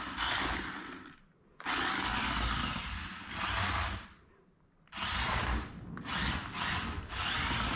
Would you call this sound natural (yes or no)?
yes